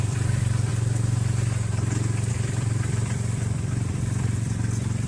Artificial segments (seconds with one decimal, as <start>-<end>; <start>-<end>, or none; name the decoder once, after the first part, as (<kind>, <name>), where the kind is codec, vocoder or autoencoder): 0.0-0.7 (vocoder, BigVGAN v2); 2.3-5.1